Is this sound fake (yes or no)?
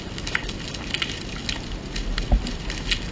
no